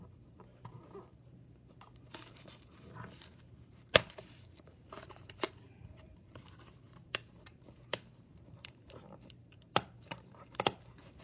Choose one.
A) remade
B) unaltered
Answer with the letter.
A